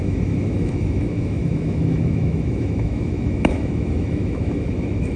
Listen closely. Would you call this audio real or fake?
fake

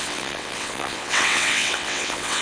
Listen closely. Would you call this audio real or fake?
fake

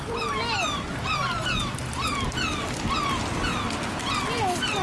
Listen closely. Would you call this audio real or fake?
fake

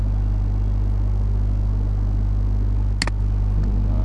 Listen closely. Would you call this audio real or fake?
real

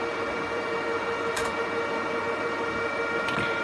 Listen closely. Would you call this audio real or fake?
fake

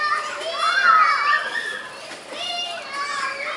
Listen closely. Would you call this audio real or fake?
real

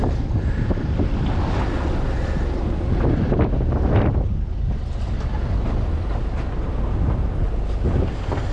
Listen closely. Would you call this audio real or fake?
real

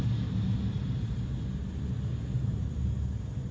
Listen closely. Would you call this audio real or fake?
real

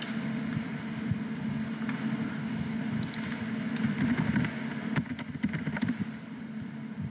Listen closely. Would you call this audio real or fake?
real